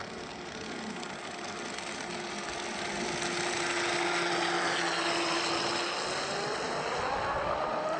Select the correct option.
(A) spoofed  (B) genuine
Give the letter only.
B